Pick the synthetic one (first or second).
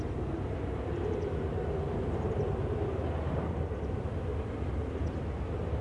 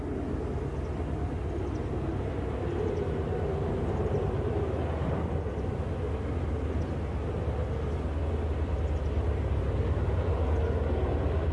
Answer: first